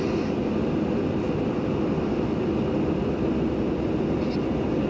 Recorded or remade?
recorded